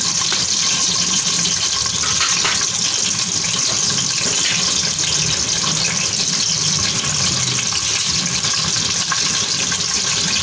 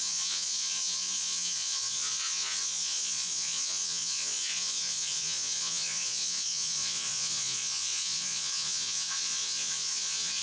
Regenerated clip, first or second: second